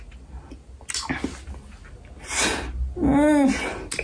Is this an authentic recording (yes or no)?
yes